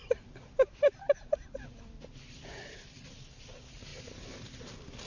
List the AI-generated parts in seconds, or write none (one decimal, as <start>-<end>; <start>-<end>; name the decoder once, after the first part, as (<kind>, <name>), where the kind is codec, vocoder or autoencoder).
0.0-3.1 (vocoder, BigVGAN v2); 3.9-4.6